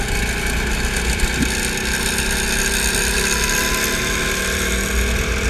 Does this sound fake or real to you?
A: real